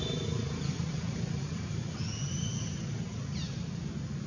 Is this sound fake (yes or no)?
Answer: no